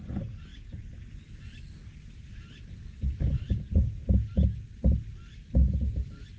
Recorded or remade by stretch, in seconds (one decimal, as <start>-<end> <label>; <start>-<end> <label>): 0.0-6.4 recorded